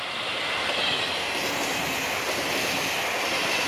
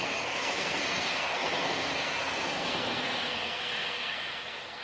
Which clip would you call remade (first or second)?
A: second